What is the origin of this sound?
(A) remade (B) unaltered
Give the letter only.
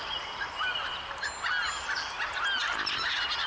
B